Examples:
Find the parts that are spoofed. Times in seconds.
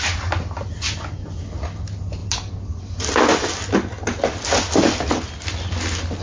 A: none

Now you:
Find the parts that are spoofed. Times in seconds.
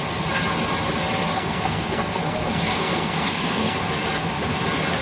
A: 1.3-3.9 (codec, SNAC)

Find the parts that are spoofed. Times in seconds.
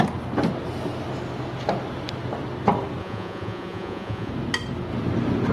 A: 3.0-4.3 (vocoder, Vocos)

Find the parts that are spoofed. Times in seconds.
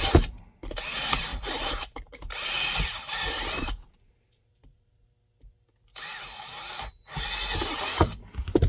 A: 1.3-5.1 (vocoder, BigVGAN v2)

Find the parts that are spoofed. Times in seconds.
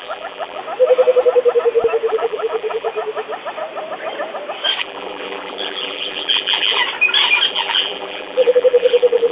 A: 0.0-0.6 (vocoder, BigVGAN v2); 2.1-2.9; 4.8-6.8; 7.5-9.3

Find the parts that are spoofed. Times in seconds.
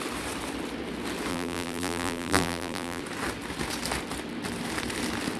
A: 1.3-3.0 (vocoder, BigVGAN v2)